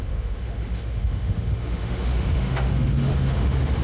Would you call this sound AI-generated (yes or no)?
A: yes